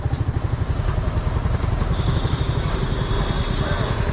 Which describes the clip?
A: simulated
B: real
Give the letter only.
B